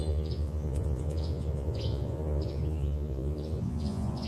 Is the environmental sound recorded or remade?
remade